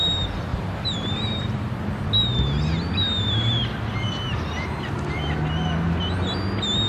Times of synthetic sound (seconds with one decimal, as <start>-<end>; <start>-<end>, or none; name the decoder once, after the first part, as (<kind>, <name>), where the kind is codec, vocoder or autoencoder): 0.5-1.7 (vocoder, BigVGAN v2)